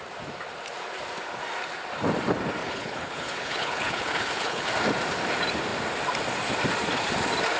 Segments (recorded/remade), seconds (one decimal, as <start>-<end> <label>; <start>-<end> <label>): 0.0-2.6 recorded; 2.6-4.7 remade; 4.7-7.6 recorded